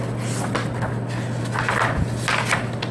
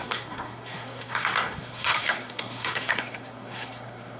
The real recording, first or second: first